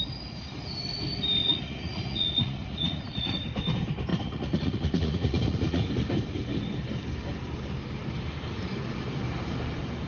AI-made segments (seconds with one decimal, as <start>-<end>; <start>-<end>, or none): 1.4-3.4; 4.1-5.8